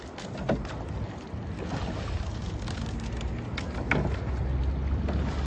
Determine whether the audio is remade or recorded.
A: recorded